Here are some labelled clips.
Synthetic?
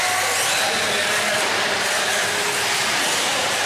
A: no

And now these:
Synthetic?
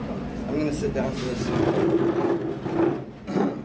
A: no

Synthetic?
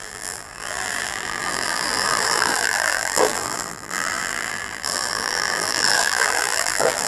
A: yes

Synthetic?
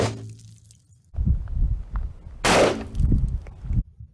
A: no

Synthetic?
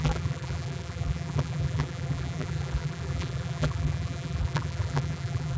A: yes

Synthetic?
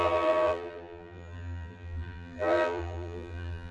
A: yes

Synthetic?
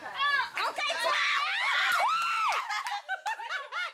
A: no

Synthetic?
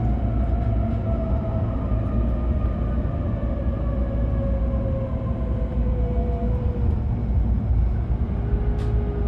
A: no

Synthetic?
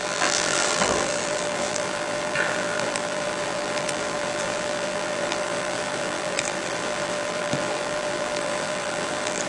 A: yes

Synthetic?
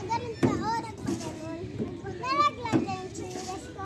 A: no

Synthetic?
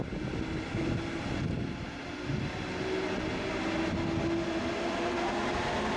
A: no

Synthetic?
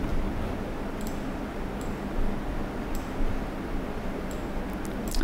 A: no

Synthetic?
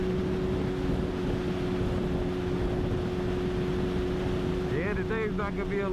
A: no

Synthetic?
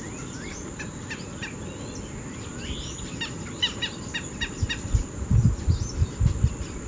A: no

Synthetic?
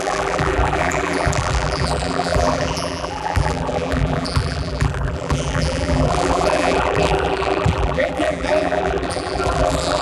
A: yes